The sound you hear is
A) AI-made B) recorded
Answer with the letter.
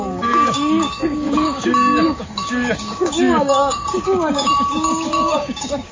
A